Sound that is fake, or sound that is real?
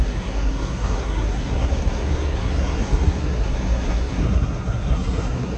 fake